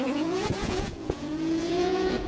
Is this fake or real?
fake